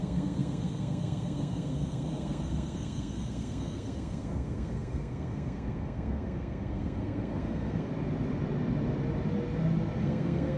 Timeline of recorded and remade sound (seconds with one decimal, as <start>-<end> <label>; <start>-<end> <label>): 0.0-7.9 remade; 7.9-10.0 recorded; 10.0-10.6 remade